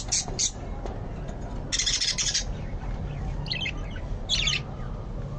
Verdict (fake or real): real